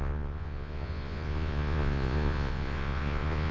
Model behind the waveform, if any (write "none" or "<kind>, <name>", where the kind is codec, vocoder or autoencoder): vocoder, Vocos